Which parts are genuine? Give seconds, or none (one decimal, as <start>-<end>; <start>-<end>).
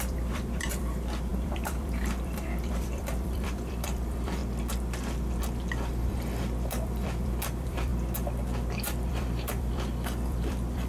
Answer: 4.4-6.7; 7.9-9.1